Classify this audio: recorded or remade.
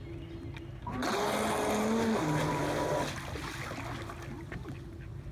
recorded